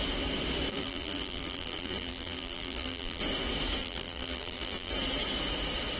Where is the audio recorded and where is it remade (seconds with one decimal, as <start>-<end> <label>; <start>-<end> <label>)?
0.0-0.7 recorded; 0.7-3.2 remade; 3.2-3.8 recorded; 3.8-4.9 remade; 4.9-6.0 recorded